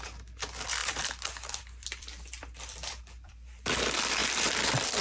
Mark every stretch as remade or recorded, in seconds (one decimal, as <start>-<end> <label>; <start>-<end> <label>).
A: 0.0-0.8 recorded; 0.8-3.8 remade; 3.8-4.2 recorded; 4.2-5.0 remade